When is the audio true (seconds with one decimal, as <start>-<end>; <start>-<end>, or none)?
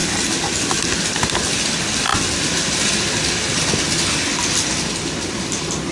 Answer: 0.0-5.9